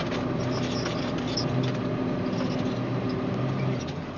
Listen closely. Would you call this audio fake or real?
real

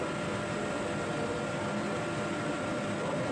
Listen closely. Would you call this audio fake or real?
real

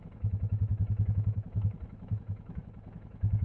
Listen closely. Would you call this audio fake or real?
fake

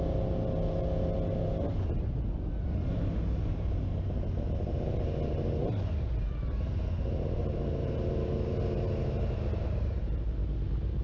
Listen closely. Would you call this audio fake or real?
real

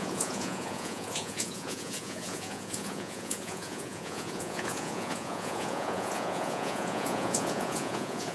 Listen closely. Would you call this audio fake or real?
fake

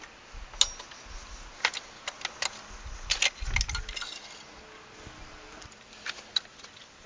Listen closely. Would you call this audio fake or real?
real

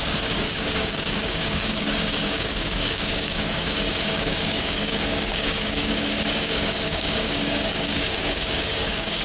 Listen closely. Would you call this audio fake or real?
fake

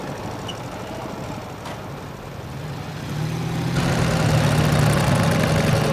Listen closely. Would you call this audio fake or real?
real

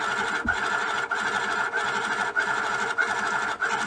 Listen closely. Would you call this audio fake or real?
real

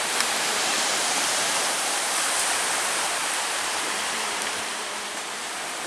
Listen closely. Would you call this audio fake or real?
fake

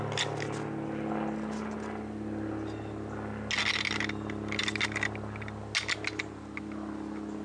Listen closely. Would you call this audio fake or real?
real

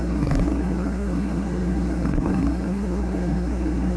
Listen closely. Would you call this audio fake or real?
fake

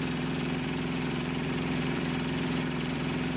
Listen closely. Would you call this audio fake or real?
fake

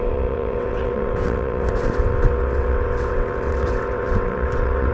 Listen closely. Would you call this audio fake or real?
fake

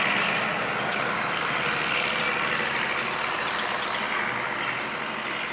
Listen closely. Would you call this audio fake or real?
real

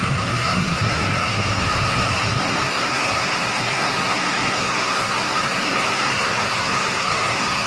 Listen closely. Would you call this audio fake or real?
fake